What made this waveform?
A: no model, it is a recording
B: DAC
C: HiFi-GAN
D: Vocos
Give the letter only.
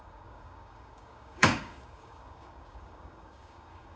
B